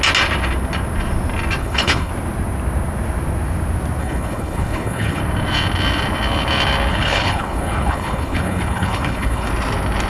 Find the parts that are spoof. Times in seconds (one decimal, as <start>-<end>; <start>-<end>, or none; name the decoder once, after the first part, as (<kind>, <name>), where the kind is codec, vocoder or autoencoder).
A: 1.6-2.1 (codec, HILCodec); 4.0-5.2; 6.9-9.5

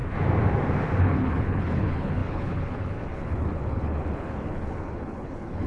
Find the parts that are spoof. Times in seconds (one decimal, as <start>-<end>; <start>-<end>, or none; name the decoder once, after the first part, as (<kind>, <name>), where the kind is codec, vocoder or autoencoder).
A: 1.0-5.7 (codec, HILCodec)

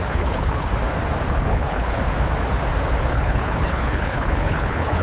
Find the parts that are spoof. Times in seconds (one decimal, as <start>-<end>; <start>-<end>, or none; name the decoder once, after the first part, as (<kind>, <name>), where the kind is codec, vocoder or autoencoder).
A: 0.0-0.7 (codec, HILCodec); 1.3-2.0; 3.1-5.0

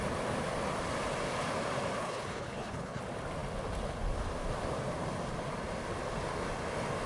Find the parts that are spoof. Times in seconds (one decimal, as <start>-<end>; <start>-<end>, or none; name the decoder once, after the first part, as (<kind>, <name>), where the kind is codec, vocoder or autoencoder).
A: 2.0-3.0 (codec, HILCodec)

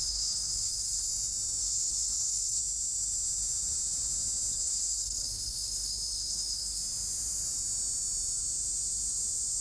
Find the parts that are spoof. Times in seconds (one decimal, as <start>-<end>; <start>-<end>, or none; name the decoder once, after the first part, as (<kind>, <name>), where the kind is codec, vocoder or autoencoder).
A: 0.0-1.1 (codec, HILCodec); 1.6-2.6; 4.5-6.8